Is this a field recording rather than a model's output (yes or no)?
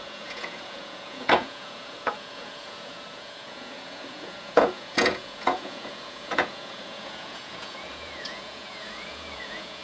no